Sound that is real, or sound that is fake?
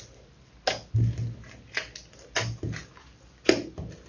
real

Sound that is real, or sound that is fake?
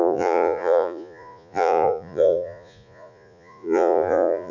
fake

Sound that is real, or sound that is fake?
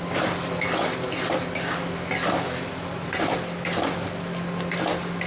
real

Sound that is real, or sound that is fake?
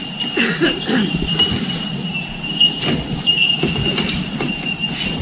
real